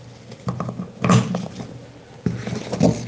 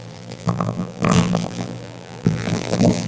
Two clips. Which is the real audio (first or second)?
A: first